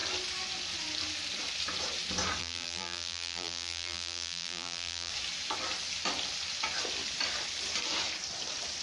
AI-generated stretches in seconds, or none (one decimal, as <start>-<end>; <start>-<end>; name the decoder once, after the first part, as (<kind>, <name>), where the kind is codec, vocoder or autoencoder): 2.4-5.1 (vocoder, BigVGAN v2)